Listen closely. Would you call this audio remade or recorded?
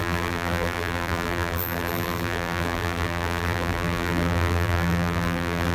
remade